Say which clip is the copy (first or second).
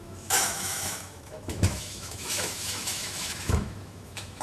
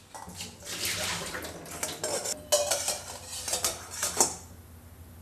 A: first